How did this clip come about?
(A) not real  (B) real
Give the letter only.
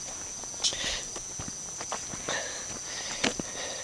B